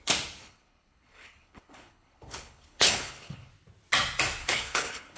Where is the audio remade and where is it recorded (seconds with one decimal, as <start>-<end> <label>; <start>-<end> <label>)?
0.0-0.4 recorded; 0.4-3.5 remade; 3.5-4.4 recorded; 4.4-5.2 remade